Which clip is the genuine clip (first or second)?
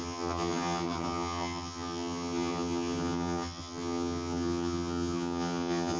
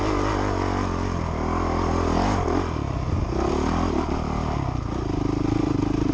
second